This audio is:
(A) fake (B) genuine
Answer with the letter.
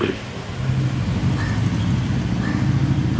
B